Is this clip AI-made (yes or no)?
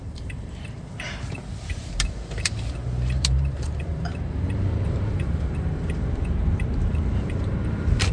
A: yes